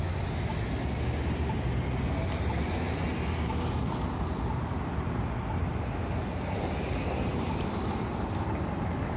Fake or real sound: real